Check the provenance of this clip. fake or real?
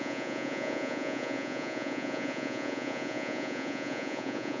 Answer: fake